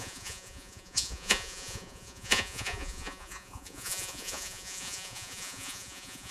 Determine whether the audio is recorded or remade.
remade